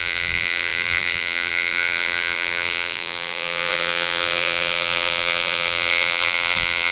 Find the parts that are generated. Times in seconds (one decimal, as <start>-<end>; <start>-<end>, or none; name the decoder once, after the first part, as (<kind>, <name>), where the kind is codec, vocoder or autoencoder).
0.0-6.9 (vocoder, BigVGAN v2)